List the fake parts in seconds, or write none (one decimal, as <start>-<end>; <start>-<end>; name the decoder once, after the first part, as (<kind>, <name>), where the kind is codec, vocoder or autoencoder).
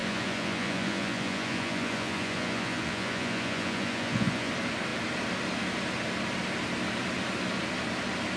0.0-4.5 (vocoder, Vocos)